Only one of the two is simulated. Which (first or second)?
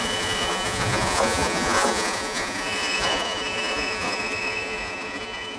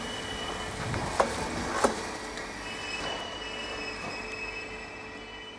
first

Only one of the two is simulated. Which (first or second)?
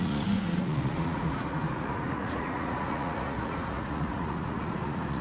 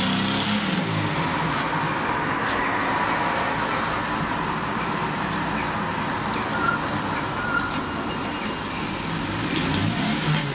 first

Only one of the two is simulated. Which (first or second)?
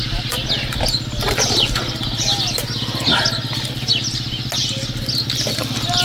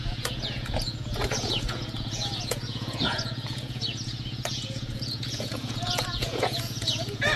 second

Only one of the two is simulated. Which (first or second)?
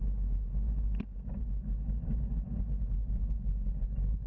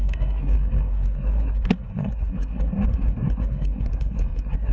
second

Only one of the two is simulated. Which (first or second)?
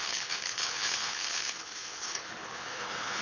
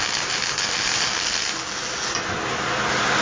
first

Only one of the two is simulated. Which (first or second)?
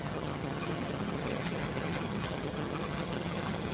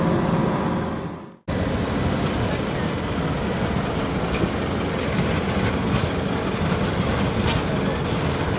first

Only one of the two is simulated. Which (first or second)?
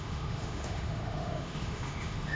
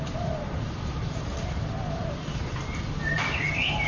first